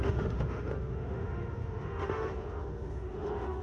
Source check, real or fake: fake